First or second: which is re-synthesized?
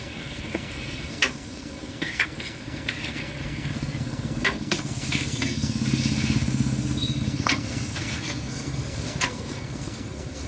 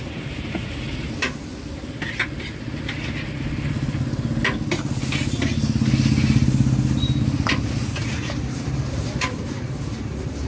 first